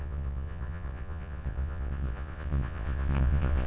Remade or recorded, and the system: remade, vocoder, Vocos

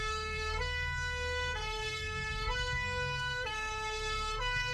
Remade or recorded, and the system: remade, codec, SNAC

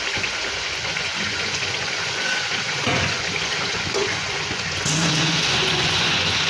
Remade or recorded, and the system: remade, vocoder, Vocos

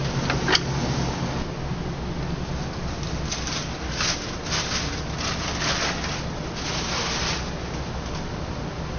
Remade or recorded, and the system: recorded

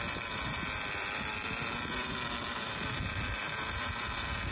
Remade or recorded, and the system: remade, vocoder, BigVGAN v2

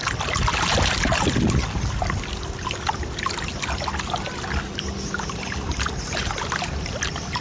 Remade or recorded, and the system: recorded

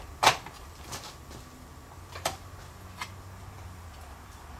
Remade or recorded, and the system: recorded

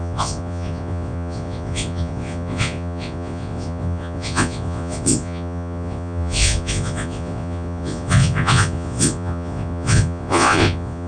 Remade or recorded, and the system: remade, vocoder, Vocos